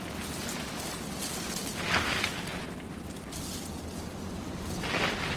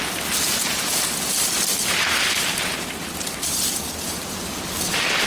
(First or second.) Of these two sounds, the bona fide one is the first